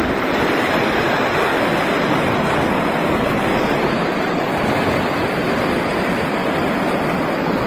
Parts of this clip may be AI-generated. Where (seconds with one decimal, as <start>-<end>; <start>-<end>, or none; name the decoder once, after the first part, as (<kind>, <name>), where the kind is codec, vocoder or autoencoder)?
0.0-1.5 (vocoder, BigVGAN v2); 5.5-6.4; 7.3-7.7